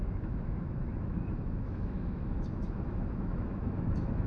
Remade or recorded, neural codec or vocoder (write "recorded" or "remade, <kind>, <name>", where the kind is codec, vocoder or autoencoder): remade, autoencoder, DAC-VAE